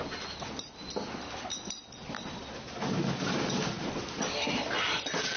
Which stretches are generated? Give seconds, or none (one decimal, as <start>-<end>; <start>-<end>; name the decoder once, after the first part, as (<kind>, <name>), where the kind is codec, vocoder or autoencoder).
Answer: none